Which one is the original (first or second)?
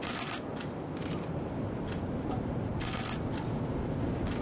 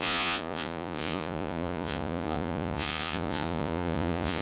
first